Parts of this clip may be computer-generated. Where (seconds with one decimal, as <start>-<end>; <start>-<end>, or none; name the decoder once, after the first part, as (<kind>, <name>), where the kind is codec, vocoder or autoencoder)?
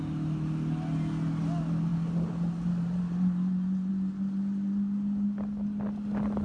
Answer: none